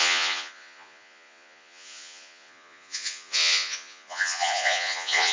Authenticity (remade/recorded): remade